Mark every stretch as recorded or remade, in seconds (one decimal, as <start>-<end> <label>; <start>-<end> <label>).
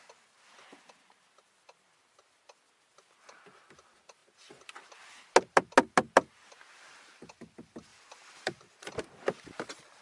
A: 0.0-7.9 recorded; 7.9-9.0 remade; 9.0-10.0 recorded